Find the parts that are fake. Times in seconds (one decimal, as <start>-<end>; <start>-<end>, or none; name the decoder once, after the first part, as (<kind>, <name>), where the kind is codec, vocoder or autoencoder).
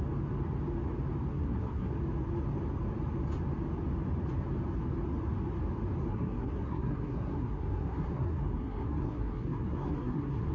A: 1.3-1.9 (codec, SNAC); 6.1-10.5